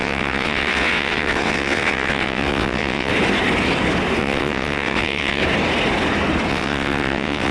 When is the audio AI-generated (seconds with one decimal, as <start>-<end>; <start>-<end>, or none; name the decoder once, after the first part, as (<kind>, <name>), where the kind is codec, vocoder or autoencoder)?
0.0-3.1 (vocoder, WaveNeXt); 4.2-5.4; 6.5-7.5

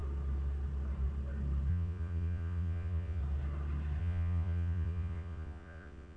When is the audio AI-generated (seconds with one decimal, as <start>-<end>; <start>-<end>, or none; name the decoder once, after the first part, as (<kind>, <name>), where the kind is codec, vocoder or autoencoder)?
1.7-3.2 (vocoder, Vocos); 4.0-6.2